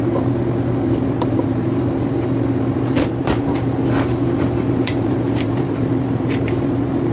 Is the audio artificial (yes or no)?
yes